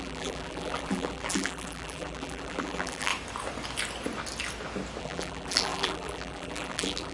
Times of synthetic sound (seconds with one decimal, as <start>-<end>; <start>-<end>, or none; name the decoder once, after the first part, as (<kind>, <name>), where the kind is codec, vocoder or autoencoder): 0.0-3.1 (vocoder, BigVGAN v2); 5.0-7.1